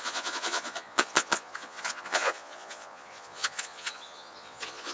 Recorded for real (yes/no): no